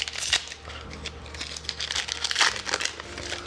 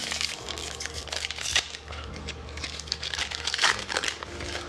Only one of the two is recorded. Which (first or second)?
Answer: first